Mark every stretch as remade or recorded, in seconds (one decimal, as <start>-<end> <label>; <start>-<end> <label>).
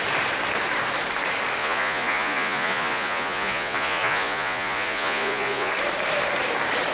0.0-1.6 recorded; 1.6-5.7 remade; 5.7-6.9 recorded